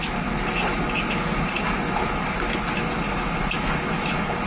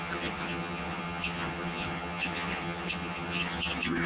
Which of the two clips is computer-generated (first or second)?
second